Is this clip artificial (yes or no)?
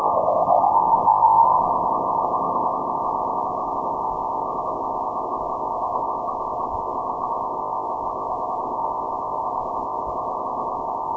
yes